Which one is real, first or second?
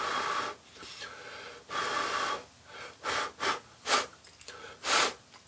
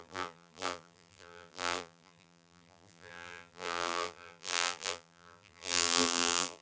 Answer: first